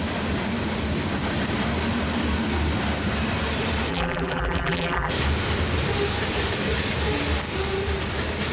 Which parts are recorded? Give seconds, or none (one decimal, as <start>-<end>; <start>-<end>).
0.0-3.9; 5.1-8.5

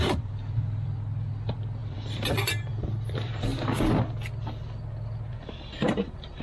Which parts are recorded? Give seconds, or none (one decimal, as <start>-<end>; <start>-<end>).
3.5-5.9

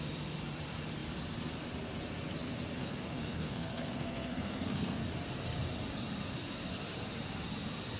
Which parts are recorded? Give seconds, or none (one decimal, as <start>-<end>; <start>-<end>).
0.0-2.8; 5.0-8.0

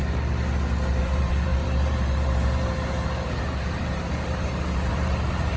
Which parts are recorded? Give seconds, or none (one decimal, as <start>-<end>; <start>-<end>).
0.0-1.0